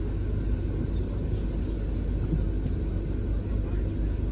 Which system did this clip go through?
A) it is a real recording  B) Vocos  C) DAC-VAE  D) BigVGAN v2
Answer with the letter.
A